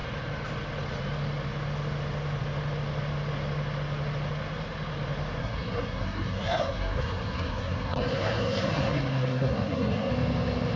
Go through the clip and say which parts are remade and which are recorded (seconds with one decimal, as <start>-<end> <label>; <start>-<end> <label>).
0.0-5.4 recorded; 5.4-10.1 remade; 10.1-10.8 recorded